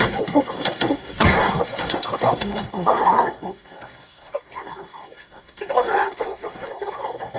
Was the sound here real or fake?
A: fake